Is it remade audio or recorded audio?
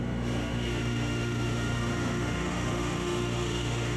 remade